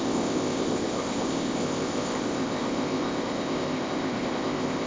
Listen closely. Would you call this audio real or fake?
fake